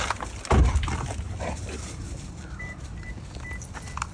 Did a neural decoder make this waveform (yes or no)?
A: no